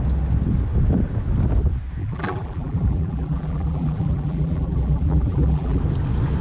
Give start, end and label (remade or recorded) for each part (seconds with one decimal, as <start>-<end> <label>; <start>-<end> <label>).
0.0-2.0 recorded; 2.0-5.8 remade; 5.8-6.4 recorded

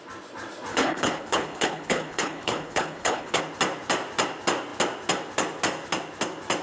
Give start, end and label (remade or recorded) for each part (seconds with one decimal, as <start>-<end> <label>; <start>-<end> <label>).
0.0-0.7 recorded; 0.7-3.4 remade; 3.4-6.6 recorded

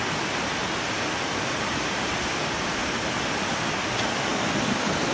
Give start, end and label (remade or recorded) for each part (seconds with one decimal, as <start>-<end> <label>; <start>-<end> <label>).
0.0-0.6 remade; 0.6-2.0 recorded; 2.0-2.8 remade; 2.8-3.7 recorded; 3.7-5.1 remade

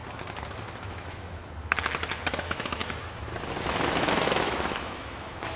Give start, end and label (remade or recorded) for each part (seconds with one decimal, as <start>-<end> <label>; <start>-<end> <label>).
0.0-0.8 recorded; 0.8-1.4 remade; 1.4-2.3 recorded; 2.3-2.8 remade; 2.8-4.1 recorded; 4.1-5.6 remade

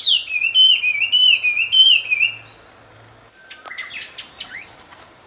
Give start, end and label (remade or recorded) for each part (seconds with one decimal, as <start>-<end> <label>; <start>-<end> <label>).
0.0-5.3 recorded

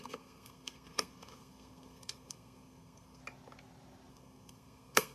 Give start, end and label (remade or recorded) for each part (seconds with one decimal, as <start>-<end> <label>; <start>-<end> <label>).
0.0-3.2 remade; 3.2-4.1 recorded; 4.1-5.1 remade